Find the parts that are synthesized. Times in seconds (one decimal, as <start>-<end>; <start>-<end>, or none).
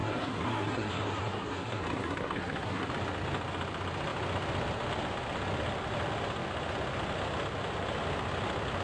0.0-2.9